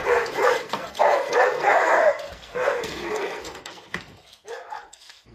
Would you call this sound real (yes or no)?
no